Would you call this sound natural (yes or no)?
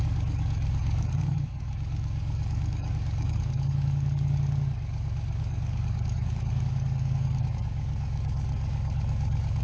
no